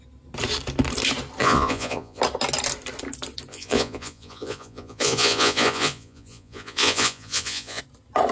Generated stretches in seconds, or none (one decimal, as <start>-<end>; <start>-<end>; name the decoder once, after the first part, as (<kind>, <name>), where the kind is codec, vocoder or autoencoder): 1.4-2.2 (vocoder, Vocos); 3.5-7.8

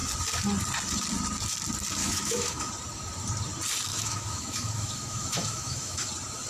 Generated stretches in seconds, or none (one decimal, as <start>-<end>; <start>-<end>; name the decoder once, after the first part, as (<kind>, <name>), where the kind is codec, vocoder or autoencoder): 2.0-2.7 (autoencoder, DAC-VAE); 3.9-6.1

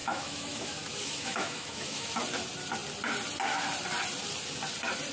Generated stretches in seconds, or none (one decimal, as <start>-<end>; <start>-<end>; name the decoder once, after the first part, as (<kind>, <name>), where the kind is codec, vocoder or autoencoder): 0.0-2.1 (autoencoder, DAC-VAE)

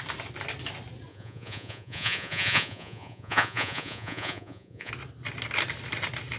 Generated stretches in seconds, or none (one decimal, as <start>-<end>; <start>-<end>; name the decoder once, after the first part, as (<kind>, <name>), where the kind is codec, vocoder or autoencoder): 1.1-4.9 (vocoder, Vocos)

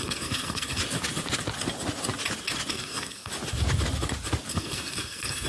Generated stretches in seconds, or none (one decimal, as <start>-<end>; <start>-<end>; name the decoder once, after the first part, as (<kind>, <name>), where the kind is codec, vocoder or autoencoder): 0.0-0.8 (codec, SNAC); 2.7-3.3; 4.5-5.5

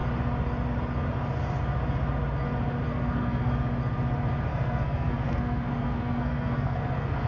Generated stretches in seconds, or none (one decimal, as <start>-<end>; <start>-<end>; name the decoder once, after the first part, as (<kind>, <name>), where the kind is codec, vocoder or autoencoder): 2.9-3.5 (codec, SNAC); 4.5-7.3